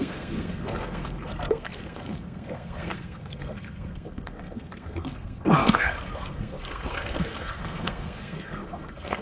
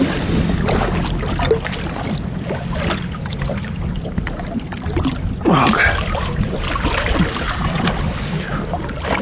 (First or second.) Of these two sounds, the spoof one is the first